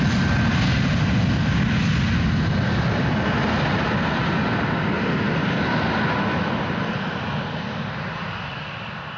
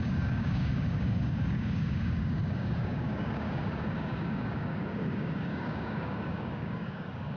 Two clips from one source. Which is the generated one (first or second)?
second